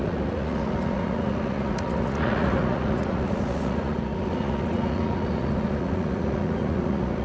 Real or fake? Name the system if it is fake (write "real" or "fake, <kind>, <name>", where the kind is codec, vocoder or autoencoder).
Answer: fake, vocoder, Vocos